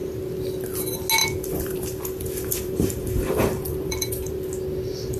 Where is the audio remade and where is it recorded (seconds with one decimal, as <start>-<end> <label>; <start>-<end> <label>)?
0.0-1.2 recorded; 1.2-4.3 remade; 4.3-5.2 recorded